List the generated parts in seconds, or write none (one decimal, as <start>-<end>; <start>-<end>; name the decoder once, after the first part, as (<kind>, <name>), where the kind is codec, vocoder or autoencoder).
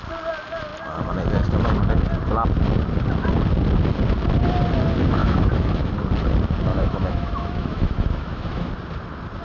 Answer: 5.2-5.9 (autoencoder, DAC-VAE); 6.7-8.7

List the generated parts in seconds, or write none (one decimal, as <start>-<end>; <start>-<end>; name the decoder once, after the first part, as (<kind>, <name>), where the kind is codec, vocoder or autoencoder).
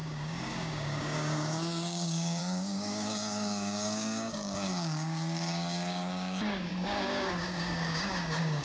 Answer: 0.0-8.6 (codec, DAC)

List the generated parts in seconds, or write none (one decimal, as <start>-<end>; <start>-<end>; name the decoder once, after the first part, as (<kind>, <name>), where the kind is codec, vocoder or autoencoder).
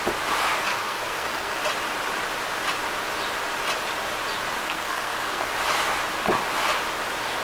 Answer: 0.7-1.6 (codec, SNAC); 4.6-5.5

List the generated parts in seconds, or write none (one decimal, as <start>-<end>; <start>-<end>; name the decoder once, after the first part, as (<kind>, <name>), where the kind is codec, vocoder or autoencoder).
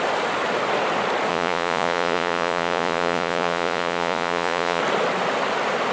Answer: 1.3-4.8 (vocoder, Vocos)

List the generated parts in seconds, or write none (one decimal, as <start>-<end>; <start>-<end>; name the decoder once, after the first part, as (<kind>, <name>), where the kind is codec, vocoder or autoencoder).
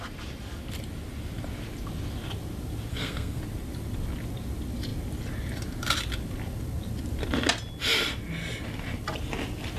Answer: 2.9-3.4 (codec, SNAC)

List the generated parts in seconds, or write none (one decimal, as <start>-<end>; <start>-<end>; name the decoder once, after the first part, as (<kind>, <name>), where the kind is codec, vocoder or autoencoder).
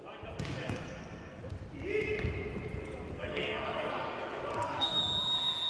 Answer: 0.6-1.4 (codec, SNAC); 3.1-3.9; 4.5-5.0